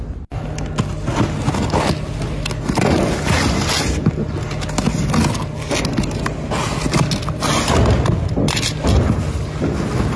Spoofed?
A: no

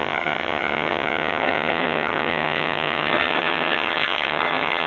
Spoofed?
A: yes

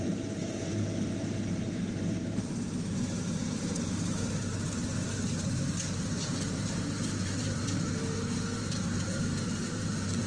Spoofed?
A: yes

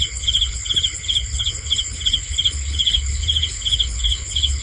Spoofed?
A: yes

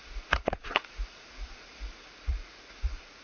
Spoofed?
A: yes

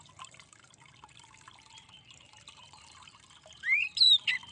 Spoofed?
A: yes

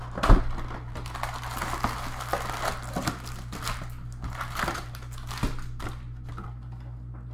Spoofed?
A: no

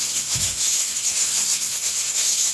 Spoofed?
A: yes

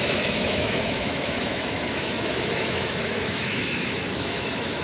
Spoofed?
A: yes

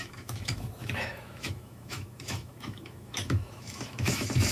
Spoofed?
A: yes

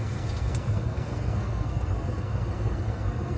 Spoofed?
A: yes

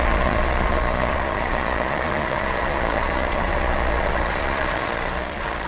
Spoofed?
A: yes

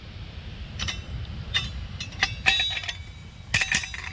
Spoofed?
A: no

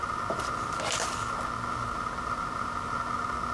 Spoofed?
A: no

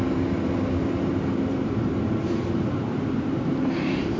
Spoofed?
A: yes